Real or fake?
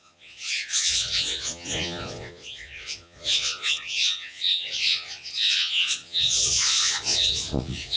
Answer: fake